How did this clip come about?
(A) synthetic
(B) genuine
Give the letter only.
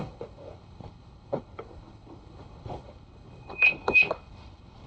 A